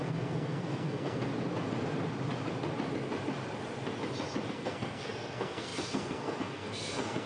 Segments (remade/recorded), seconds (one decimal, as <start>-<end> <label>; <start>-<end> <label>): 0.0-1.3 remade; 1.3-4.5 recorded; 4.5-7.3 remade